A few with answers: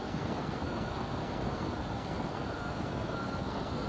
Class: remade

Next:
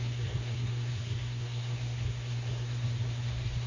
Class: remade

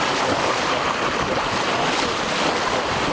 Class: recorded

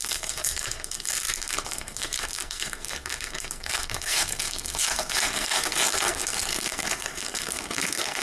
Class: remade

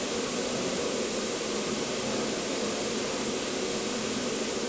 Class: recorded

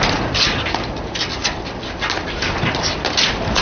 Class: recorded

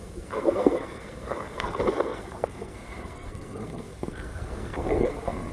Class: remade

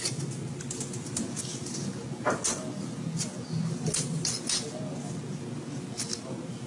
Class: recorded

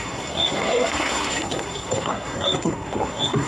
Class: remade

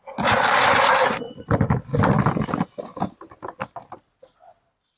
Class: recorded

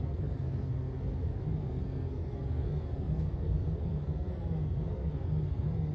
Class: remade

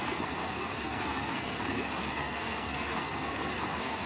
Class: remade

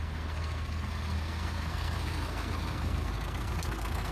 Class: remade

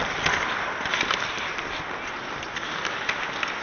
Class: recorded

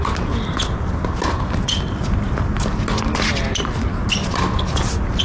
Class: recorded